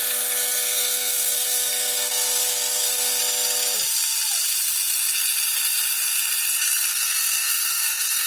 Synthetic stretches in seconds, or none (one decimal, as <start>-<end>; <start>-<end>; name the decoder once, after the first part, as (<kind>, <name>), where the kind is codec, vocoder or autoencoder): 0.0-3.2 (codec, SNAC); 6.9-8.3